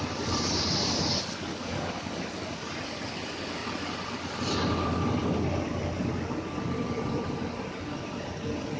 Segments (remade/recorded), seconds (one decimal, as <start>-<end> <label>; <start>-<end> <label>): 0.0-1.5 recorded; 1.5-2.7 remade; 2.7-8.8 recorded